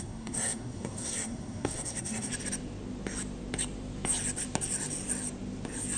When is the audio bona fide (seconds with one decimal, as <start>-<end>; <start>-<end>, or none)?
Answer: 2.3-6.0